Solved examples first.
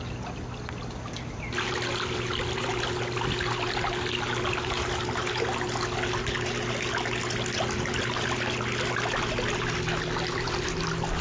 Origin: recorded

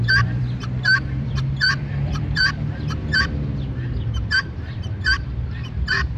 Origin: remade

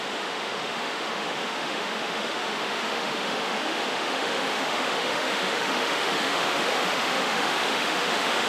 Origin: remade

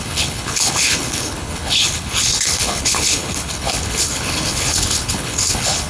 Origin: remade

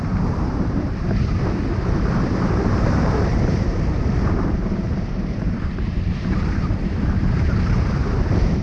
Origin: remade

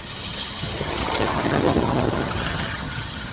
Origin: remade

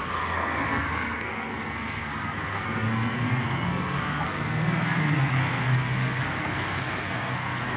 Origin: remade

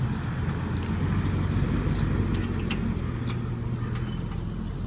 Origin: recorded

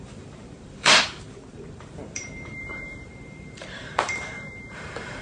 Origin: remade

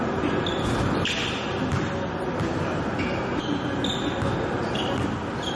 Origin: recorded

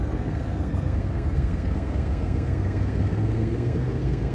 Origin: remade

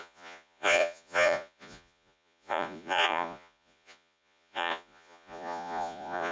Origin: remade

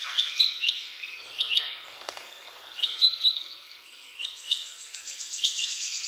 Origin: remade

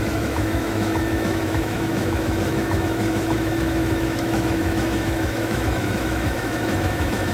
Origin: remade